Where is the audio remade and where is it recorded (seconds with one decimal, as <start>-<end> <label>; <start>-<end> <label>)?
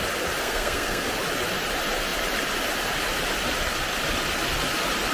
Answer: 0.0-0.4 recorded; 0.4-1.1 remade; 1.1-5.1 recorded